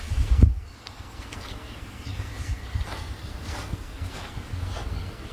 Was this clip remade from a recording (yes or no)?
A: yes